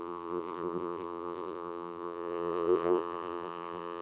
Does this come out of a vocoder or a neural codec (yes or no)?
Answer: yes